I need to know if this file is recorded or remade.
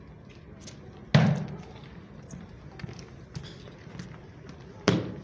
recorded